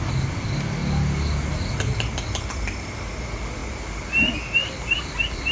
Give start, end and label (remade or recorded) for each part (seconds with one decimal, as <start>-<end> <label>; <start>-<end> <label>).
0.0-5.5 recorded

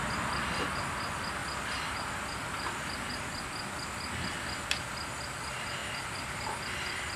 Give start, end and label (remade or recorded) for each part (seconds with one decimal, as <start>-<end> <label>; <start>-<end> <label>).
0.0-1.4 recorded; 1.4-3.1 remade; 3.1-5.8 recorded; 5.8-7.2 remade

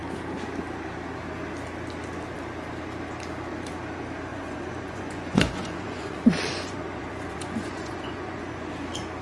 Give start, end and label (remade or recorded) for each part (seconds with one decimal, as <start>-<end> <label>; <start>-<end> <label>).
0.0-4.3 recorded; 4.3-8.7 remade; 8.7-9.2 recorded

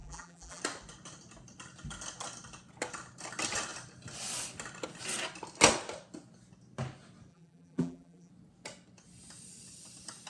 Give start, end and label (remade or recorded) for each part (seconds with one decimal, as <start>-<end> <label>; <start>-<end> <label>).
0.0-0.6 remade; 0.6-7.3 recorded; 7.3-8.3 remade; 8.3-10.3 recorded